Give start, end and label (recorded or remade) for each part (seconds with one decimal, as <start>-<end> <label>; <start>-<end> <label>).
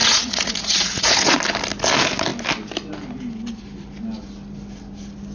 0.0-1.4 remade; 1.4-5.3 recorded